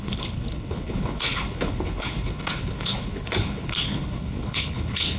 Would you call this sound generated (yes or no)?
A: yes